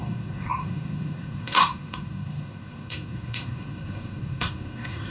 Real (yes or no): no